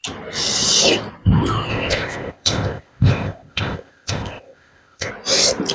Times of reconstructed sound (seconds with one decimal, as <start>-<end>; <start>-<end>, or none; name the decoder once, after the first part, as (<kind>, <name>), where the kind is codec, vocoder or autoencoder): 1.7-5.1 (codec, ZipCodec)